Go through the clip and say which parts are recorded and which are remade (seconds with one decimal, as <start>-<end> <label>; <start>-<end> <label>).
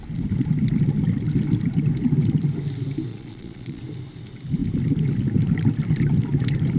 0.0-3.1 recorded; 3.1-3.8 remade; 3.8-6.8 recorded